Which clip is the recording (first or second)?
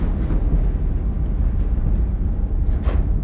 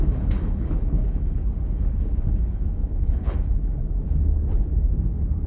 first